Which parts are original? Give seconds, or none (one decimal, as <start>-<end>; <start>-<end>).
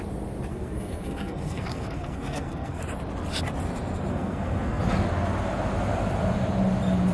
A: 0.0-0.5; 2.8-4.1; 4.8-7.1